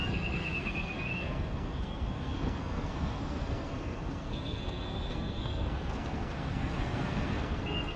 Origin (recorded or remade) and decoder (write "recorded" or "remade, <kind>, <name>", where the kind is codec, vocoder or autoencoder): remade, codec, SNAC